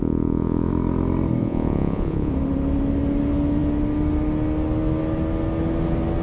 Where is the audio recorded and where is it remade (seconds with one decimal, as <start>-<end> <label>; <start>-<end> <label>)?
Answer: 0.0-0.7 remade; 0.7-1.4 recorded; 1.4-2.3 remade; 2.3-6.2 recorded